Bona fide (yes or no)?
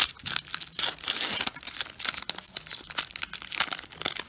yes